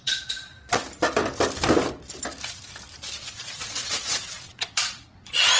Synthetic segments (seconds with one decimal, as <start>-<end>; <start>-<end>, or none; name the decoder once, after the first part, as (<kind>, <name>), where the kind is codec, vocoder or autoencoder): 0.0-0.5 (vocoder, Vocos); 3.2-5.6